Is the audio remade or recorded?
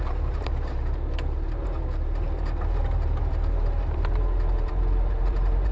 remade